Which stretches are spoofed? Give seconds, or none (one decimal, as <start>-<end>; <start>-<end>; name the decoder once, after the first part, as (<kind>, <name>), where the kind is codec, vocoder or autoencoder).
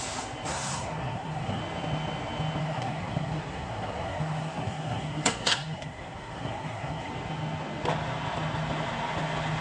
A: 0.5-1.6 (codec, SNAC); 2.6-7.1